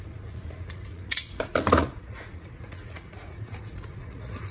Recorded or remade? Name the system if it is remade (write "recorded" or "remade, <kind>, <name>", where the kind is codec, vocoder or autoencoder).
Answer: remade, vocoder, Vocos